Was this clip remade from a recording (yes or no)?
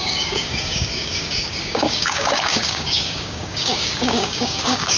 yes